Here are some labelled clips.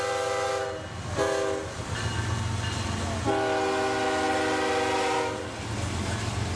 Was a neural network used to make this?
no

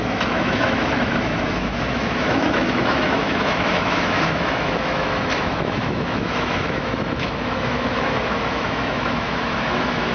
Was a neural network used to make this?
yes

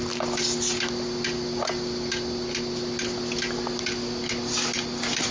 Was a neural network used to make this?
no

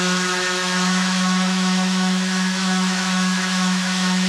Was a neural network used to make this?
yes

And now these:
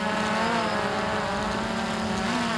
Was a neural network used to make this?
no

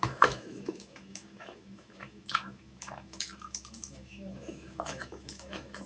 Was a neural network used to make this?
yes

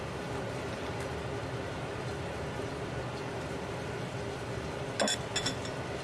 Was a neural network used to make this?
no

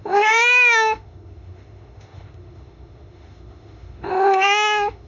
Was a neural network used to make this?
yes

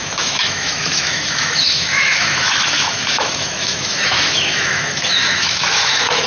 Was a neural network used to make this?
yes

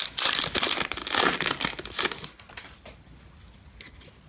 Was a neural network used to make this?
no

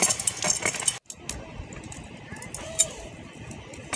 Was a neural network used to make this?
no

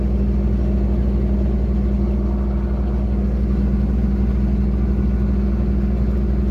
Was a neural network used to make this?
no